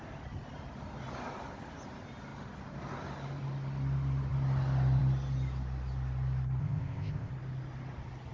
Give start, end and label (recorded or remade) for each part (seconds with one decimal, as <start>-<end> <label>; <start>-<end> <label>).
0.0-6.6 recorded; 6.6-7.3 remade; 7.3-8.3 recorded